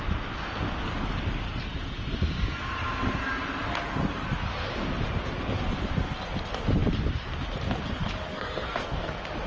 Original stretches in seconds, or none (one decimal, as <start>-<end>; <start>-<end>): 0.0-8.3; 9.1-9.5